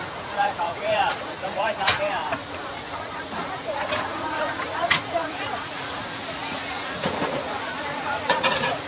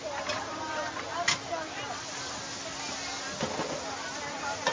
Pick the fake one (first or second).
first